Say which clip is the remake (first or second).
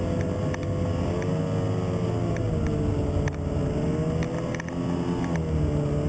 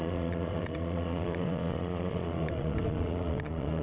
second